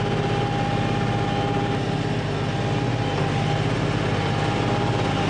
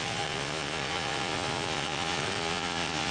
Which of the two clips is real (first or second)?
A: first